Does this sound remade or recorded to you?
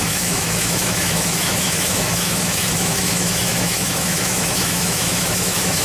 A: remade